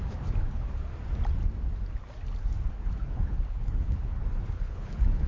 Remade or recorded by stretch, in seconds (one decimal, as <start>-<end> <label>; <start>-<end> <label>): 0.0-0.9 remade; 0.9-2.7 recorded; 2.7-5.3 remade